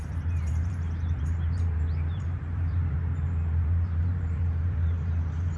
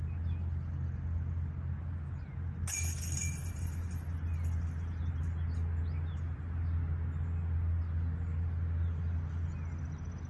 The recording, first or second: second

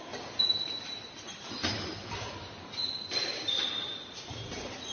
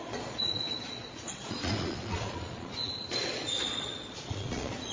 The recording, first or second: first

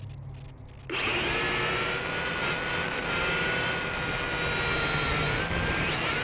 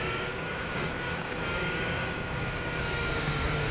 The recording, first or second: first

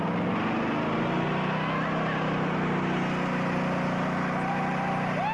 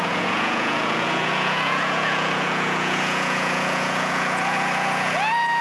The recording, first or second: first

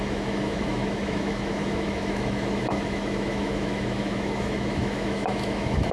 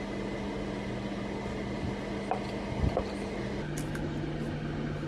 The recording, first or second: second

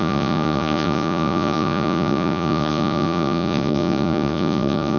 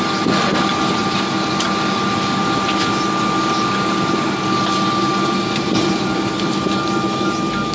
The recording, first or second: second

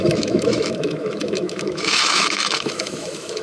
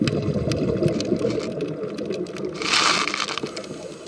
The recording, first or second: second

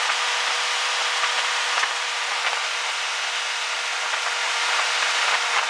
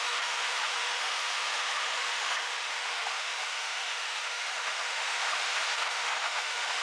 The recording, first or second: first